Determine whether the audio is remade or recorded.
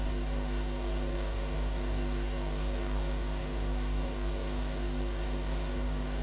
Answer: remade